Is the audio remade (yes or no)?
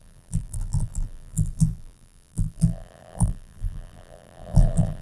yes